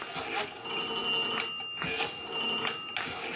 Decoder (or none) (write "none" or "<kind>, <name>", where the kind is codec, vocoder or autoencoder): none